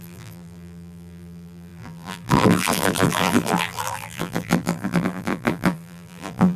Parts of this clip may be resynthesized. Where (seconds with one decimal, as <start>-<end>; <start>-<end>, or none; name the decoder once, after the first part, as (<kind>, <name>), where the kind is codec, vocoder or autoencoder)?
0.0-6.6 (vocoder, BigVGAN v2)